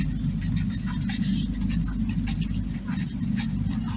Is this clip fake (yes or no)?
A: no